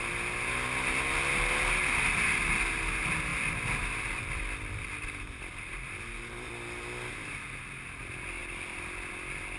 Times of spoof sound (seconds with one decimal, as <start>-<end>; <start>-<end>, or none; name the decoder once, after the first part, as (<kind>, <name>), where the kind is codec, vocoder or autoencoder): 3.3-6.5 (vocoder, BigVGAN v2)